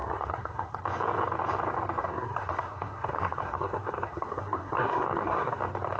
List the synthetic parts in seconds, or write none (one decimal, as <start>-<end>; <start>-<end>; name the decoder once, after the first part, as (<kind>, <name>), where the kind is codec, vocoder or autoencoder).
0.0-0.8 (codec, SNAC); 2.0-5.6